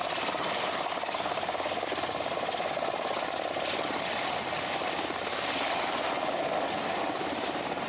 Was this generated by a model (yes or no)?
no